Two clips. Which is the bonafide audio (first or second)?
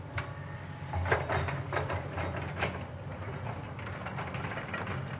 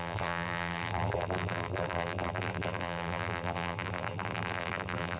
first